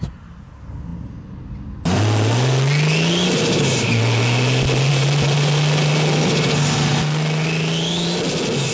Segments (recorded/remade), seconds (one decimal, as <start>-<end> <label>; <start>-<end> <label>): 0.0-8.7 recorded